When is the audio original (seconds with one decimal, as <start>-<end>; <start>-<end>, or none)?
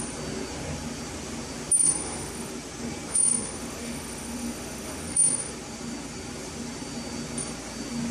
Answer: 0.0-1.8; 2.5-3.1; 5.5-8.1